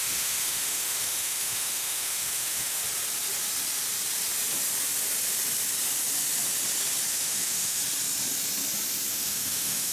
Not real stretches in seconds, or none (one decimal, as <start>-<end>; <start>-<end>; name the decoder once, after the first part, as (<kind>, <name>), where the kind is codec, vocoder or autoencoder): 0.0-2.8 (autoencoder, DAC-VAE); 7.1-7.8; 9.1-9.9